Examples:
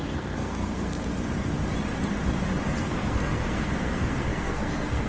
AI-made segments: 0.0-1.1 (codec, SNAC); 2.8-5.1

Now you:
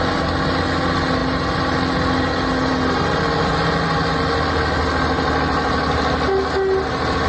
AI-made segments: none

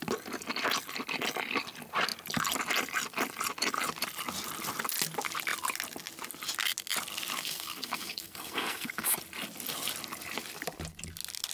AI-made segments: 7.4-9.2 (codec, SNAC)